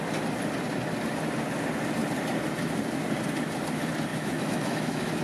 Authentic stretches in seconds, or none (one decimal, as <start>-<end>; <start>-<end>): 0.0-4.1